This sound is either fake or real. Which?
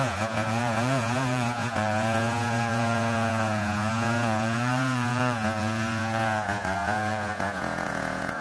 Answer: fake